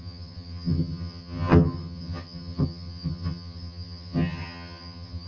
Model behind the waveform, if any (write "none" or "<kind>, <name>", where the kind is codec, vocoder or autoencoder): vocoder, HiFi-GAN